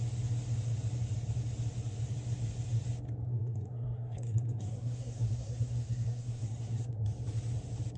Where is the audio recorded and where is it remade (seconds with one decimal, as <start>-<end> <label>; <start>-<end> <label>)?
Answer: 0.0-3.3 recorded; 3.3-7.0 remade; 7.0-8.0 recorded